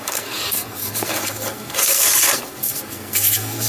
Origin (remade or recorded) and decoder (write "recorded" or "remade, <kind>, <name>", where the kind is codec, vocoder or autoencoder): remade, codec, SNAC